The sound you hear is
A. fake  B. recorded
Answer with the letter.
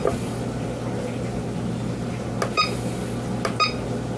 B